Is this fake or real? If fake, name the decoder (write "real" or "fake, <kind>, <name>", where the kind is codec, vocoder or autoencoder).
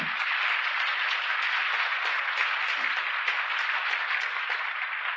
real